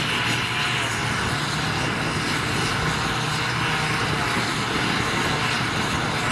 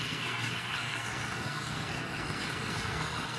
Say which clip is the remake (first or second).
second